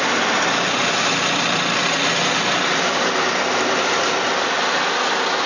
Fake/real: real